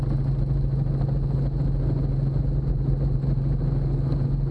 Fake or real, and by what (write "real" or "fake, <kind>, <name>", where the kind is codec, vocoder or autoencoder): real